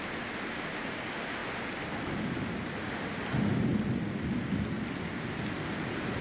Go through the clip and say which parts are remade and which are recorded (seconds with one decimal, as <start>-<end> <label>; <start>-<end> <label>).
0.0-6.2 recorded